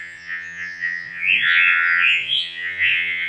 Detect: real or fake fake